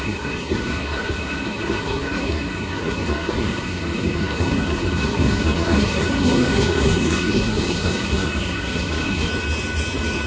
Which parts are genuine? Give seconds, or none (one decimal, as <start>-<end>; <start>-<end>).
9.3-10.3